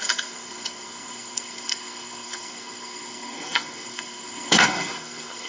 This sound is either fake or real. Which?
fake